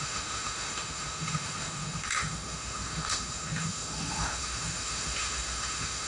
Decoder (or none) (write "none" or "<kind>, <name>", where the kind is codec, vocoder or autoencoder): autoencoder, DAC-VAE